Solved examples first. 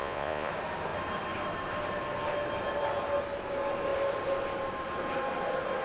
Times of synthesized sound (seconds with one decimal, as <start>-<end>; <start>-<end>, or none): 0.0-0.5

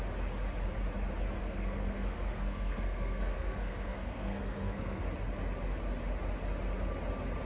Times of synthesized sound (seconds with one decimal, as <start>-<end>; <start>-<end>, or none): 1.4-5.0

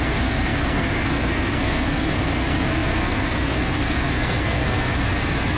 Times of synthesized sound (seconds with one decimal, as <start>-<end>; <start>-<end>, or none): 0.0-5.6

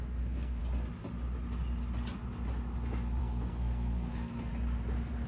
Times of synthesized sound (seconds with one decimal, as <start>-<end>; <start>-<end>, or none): 0.0-0.6; 3.2-4.5

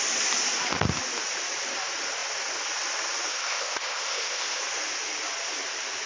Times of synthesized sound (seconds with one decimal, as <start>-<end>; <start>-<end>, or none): 3.3-4.6

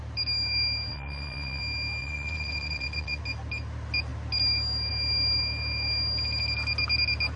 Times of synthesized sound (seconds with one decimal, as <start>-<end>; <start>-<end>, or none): 0.9-1.6; 2.0-3.2

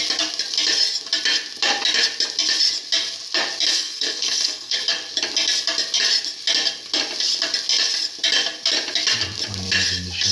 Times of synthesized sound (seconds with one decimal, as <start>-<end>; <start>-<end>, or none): 3.7-4.8

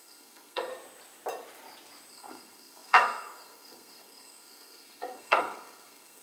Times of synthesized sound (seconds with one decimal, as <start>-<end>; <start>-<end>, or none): 0.0-0.7; 2.1-6.2